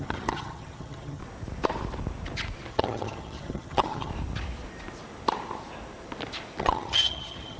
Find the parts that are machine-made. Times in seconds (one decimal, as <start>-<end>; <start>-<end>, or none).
0.0-1.2; 2.7-4.1; 6.6-7.6